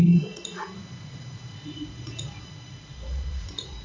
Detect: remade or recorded remade